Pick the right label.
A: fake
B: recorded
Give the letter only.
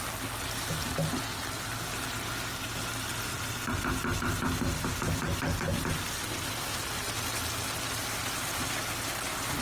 B